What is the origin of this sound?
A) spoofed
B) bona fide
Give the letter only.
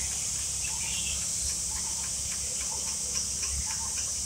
B